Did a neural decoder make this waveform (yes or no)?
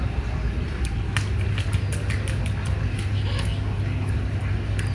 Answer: no